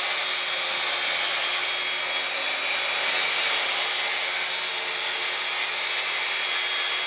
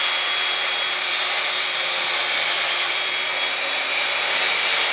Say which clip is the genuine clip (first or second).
first